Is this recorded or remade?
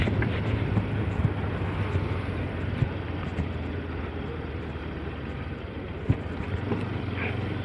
recorded